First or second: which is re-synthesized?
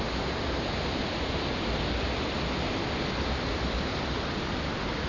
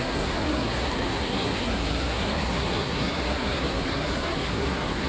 second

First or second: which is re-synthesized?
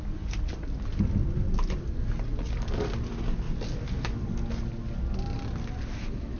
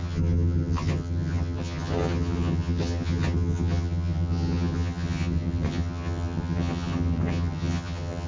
second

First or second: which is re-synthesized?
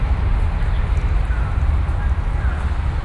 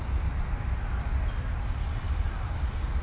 first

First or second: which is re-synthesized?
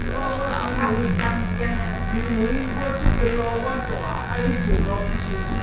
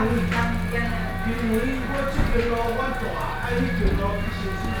first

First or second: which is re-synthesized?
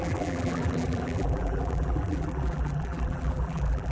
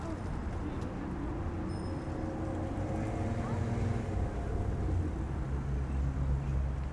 first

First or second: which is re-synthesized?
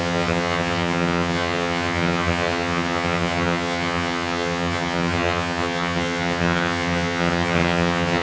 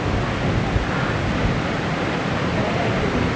first